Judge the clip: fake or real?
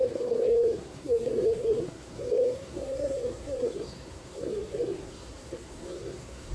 fake